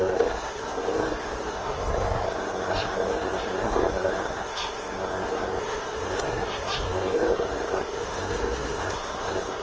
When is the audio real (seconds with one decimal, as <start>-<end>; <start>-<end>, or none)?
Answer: none